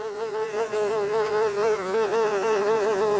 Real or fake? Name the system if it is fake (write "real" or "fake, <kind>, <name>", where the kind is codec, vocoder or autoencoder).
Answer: fake, vocoder, Vocos